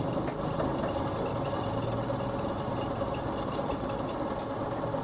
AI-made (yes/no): no